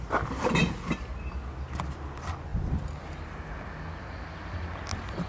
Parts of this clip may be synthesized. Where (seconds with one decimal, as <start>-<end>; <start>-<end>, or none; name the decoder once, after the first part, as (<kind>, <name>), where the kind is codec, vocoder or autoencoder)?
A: none